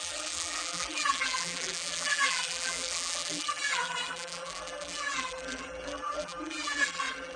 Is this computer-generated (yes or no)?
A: yes